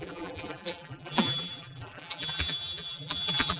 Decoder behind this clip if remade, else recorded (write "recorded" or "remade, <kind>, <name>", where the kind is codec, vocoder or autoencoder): remade, vocoder, BigVGAN v2